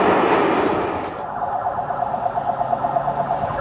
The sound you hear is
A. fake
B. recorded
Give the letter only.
B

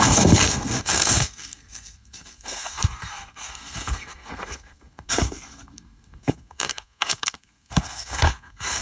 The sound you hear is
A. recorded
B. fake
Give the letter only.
B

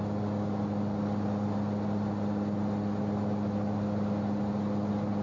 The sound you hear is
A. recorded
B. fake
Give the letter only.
A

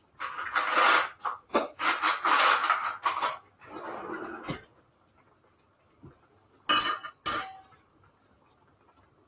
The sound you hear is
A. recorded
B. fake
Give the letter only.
A